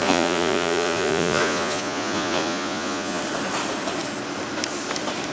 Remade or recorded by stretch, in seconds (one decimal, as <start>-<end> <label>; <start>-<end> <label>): 0.0-3.2 remade; 3.2-5.3 recorded